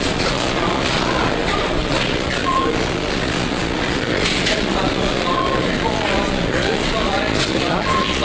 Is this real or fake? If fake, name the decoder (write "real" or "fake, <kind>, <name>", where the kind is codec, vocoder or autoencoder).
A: fake, vocoder, Vocos